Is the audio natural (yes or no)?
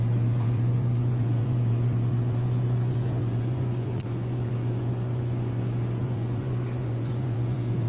no